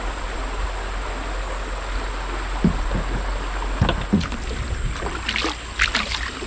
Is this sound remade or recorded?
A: recorded